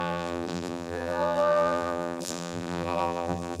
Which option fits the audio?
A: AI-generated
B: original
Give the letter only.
A